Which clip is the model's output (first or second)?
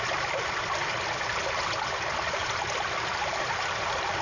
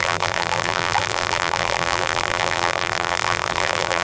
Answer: second